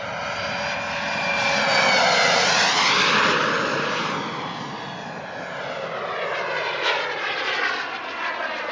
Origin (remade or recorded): recorded